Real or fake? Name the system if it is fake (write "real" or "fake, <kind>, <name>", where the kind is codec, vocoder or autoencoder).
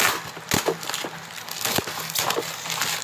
real